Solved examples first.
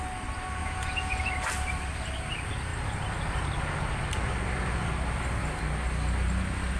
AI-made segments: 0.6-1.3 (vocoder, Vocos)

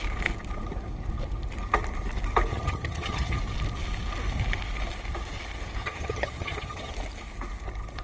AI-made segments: 2.5-3.4 (vocoder, HiFi-GAN); 5.8-6.9

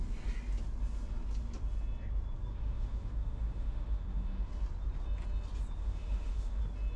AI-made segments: 2.5-4.5 (autoencoder, DAC-VAE); 5.8-6.6

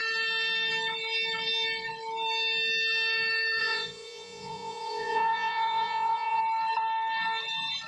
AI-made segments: 3.6-6.4 (vocoder, Vocos)

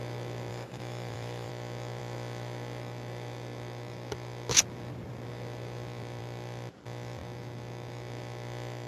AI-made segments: 0.5-1.5 (autoencoder, DAC-VAE)